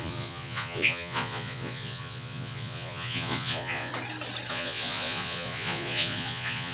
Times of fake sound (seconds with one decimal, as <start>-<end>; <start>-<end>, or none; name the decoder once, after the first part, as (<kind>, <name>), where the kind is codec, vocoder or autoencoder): 0.0-3.9 (vocoder, Vocos); 4.5-6.7